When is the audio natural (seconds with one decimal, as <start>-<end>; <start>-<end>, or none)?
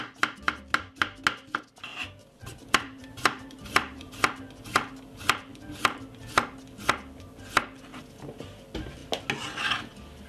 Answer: 0.0-1.9; 4.1-7.9; 8.6-10.3